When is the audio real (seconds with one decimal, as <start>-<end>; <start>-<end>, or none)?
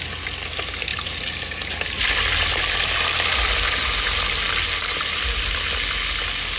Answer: 0.0-6.6